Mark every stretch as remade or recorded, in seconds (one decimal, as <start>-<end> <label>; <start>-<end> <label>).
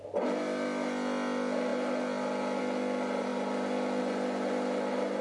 0.0-5.2 recorded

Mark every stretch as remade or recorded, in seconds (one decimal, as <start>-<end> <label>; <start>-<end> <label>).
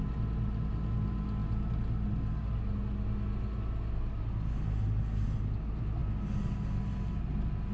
0.0-7.7 recorded